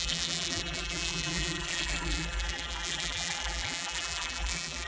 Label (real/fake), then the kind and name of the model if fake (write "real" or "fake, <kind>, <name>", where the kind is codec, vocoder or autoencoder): fake, vocoder, BigVGAN v2